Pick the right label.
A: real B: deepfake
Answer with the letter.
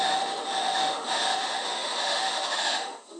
B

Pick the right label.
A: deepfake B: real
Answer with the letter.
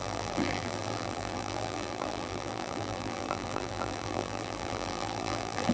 A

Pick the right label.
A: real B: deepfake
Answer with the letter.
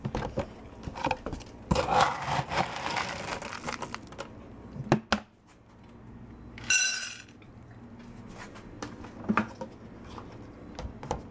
A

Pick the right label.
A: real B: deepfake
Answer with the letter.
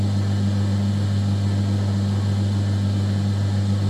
A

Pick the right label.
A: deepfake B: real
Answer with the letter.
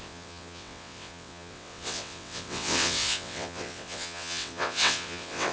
A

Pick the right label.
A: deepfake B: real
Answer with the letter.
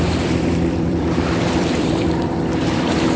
A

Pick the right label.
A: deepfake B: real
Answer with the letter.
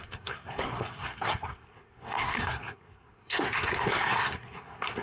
A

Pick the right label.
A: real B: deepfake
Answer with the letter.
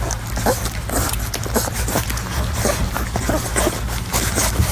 A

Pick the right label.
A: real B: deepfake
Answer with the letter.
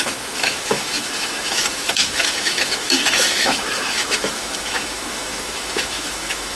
B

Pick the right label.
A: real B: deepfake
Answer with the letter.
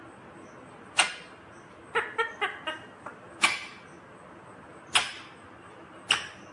A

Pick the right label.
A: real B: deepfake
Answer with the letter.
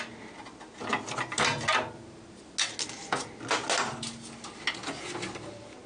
A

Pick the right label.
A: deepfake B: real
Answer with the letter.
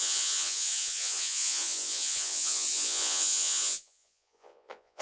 A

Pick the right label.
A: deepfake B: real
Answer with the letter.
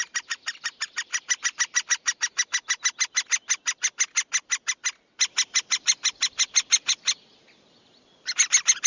B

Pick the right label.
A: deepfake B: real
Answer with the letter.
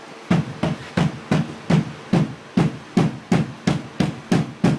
B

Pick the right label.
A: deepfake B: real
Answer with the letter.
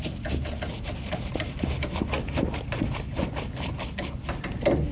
B